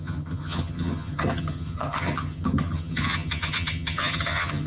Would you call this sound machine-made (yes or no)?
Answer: yes